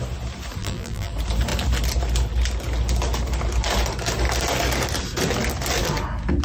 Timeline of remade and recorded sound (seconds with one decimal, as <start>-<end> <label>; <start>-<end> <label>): 0.0-0.6 recorded; 0.6-1.1 remade; 1.1-6.4 recorded